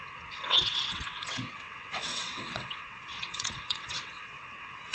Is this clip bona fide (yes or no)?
no